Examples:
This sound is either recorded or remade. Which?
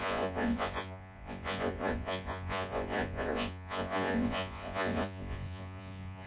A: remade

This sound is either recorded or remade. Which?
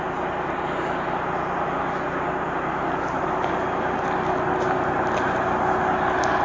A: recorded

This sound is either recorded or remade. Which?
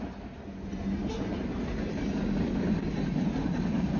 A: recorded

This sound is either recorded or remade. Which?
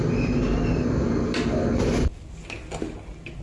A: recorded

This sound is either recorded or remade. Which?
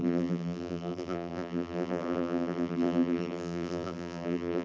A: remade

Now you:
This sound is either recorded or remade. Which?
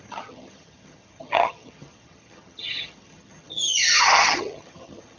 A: remade